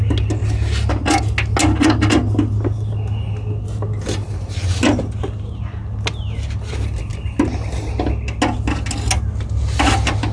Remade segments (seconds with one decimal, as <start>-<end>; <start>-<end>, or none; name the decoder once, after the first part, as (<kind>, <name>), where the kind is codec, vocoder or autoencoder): none